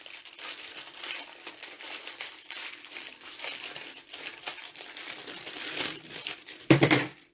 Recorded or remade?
remade